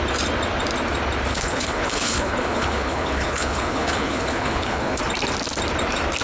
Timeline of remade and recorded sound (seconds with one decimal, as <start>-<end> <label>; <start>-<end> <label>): 0.0-1.3 recorded; 1.3-5.0 remade; 5.0-6.2 recorded